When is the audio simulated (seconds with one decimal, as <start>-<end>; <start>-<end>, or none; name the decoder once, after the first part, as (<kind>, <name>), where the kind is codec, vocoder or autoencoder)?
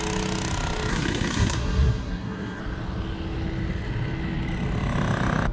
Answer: 0.9-2.6 (codec, SNAC)